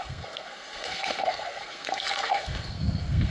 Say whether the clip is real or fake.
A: fake